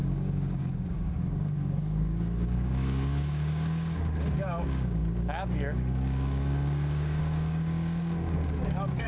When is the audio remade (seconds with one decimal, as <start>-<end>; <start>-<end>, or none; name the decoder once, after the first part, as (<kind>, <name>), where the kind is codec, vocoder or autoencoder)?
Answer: 0.0-9.1 (codec, DAC)